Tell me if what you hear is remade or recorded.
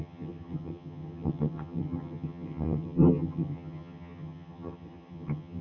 remade